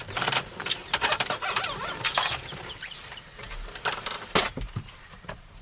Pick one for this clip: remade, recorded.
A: remade